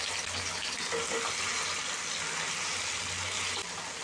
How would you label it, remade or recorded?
recorded